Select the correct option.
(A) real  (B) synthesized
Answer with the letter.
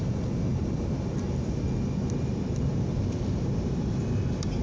A